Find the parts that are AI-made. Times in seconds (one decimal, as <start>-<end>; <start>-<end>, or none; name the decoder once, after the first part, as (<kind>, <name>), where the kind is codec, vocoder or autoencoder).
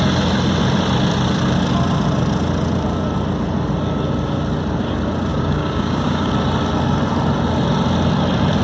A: 5.3-6.3 (codec, DAC)